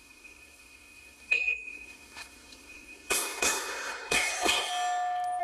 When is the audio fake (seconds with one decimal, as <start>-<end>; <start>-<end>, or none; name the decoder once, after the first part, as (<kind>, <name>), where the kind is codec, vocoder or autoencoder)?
0.0-4.7 (codec, SNAC)